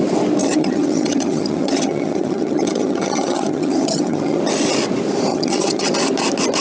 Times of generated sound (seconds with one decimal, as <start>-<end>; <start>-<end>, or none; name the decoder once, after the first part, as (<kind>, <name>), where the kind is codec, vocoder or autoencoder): 0.4-4.4 (vocoder, HiFi-GAN); 5.3-5.9